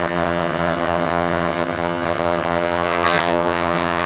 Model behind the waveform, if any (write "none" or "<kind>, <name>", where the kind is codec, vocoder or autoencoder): vocoder, HiFi-GAN